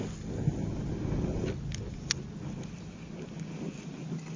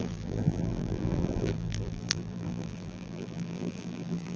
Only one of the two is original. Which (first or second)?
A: first